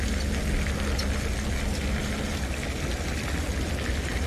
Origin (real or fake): real